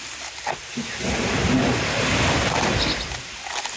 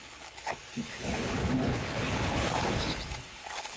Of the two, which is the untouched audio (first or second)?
first